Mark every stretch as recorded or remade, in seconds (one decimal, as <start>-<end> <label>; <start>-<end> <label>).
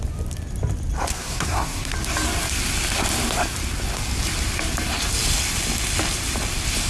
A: 0.0-1.1 recorded; 1.1-1.9 remade; 1.9-6.9 recorded